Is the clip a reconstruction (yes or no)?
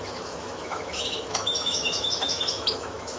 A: yes